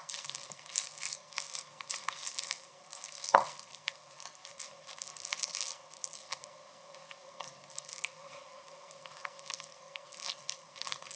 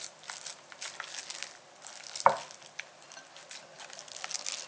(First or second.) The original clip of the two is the second